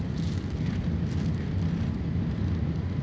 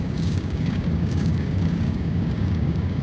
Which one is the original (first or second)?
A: first